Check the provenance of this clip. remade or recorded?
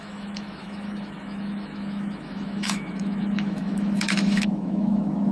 remade